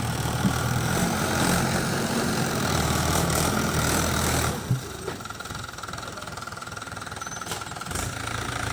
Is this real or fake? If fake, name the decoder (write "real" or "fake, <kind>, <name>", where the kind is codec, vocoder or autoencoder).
fake, vocoder, BigVGAN v2